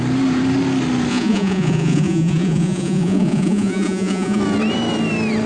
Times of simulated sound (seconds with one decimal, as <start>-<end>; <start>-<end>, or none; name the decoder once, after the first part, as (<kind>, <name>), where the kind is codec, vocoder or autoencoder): 1.1-4.4 (vocoder, Vocos)